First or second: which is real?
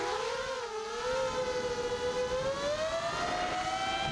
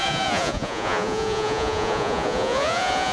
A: first